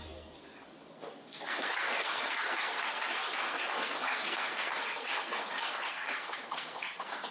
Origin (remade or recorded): remade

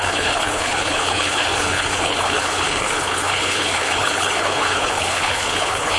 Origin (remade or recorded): remade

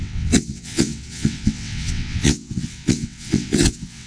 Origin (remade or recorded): remade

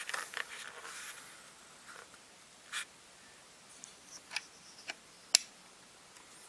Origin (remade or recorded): recorded